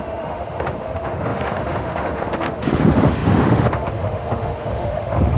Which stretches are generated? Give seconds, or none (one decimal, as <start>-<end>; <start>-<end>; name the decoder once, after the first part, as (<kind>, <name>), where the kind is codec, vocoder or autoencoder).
0.0-5.4 (autoencoder, DAC-VAE)